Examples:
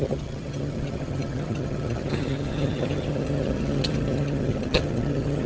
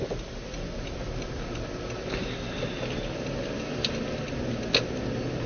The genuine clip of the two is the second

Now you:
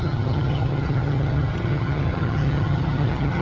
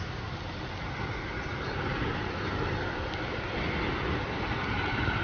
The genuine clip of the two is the second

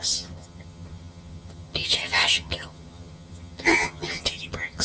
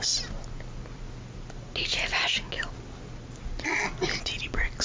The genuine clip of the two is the second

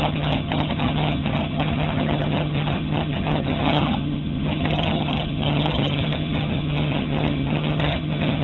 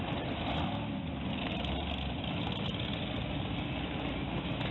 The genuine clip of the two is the second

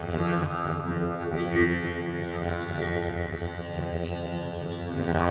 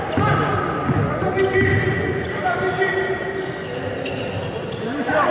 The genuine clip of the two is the second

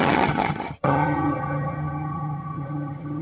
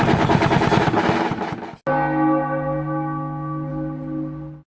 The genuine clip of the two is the second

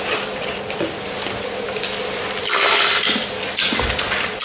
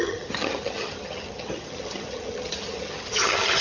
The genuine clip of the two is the first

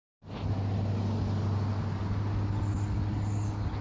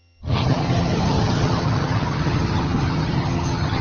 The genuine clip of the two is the first